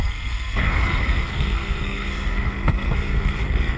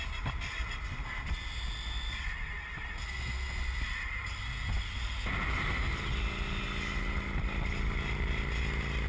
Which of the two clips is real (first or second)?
second